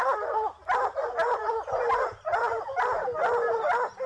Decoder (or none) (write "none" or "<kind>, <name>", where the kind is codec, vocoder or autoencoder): none